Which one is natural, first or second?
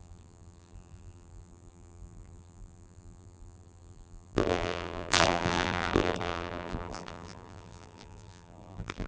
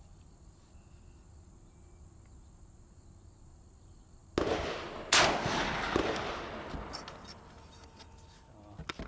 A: second